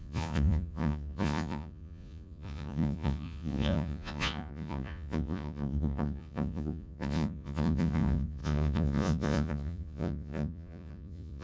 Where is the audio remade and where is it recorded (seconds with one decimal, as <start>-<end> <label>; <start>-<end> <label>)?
0.0-11.4 remade